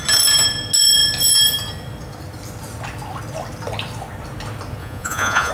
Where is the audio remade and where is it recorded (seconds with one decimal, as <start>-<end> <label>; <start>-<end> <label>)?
0.0-4.8 recorded; 4.8-5.5 remade